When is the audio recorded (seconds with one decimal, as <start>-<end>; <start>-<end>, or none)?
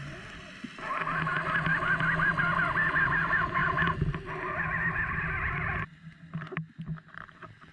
0.0-7.7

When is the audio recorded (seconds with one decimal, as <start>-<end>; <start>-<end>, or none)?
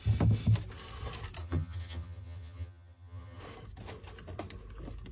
0.0-1.4; 3.4-5.1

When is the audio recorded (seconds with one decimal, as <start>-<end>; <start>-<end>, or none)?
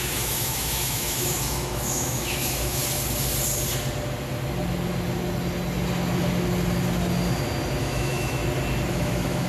2.8-7.8; 8.4-8.9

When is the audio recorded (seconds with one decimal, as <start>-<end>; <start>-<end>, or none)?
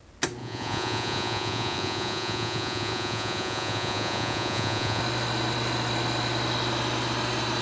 0.0-0.4; 5.0-7.6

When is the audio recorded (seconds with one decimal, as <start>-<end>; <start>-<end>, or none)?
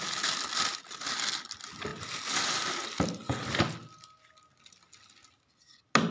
0.0-6.1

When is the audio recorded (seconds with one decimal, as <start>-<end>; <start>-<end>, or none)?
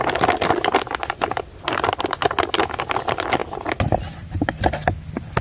0.0-5.4